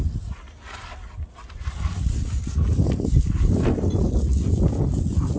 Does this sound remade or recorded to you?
recorded